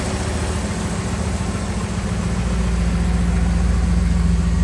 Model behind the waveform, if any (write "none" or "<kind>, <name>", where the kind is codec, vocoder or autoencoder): none